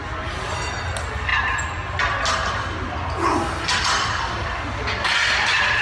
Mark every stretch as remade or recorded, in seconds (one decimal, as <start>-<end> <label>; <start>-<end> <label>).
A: 0.0-5.8 recorded